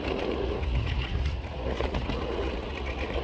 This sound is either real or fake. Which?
fake